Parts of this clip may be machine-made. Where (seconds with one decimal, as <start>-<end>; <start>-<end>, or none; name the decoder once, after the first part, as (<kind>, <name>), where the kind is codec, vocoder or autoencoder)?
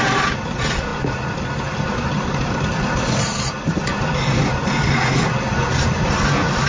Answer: none